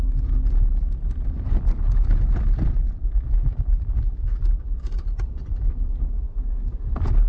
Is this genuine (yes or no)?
yes